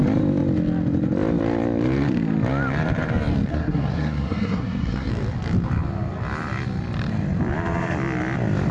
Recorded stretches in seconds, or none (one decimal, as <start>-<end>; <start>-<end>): 0.0-3.5; 5.1-8.7